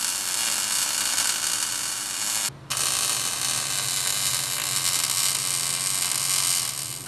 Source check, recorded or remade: recorded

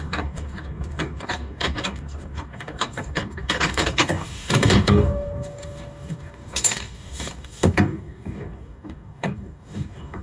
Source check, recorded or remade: remade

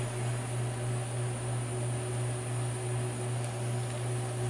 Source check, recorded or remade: recorded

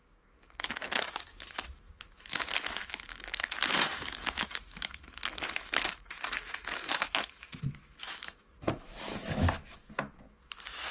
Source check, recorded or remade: remade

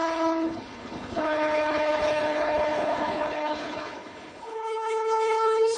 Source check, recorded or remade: remade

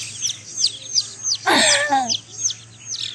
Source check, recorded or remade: recorded